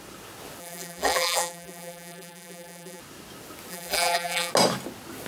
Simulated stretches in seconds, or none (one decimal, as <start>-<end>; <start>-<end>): 0.6-3.0; 3.7-4.5